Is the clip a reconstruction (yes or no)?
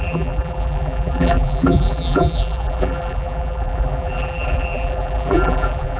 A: yes